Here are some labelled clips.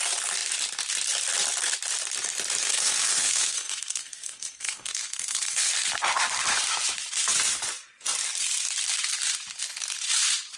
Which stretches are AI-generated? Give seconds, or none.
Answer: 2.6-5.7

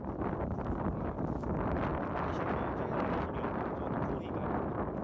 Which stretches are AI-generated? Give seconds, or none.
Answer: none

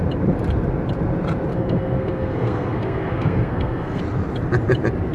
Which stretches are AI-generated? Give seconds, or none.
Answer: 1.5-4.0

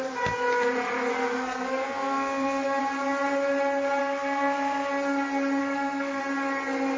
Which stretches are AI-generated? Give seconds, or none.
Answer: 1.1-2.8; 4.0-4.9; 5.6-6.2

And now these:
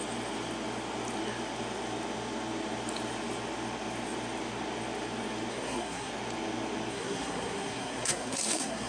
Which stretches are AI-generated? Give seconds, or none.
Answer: 5.5-6.1; 6.9-8.9